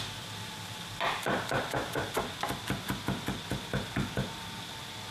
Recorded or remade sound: recorded